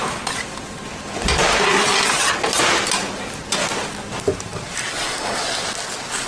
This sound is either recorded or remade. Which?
recorded